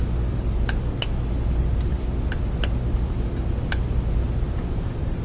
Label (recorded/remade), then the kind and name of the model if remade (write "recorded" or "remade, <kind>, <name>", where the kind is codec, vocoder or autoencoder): recorded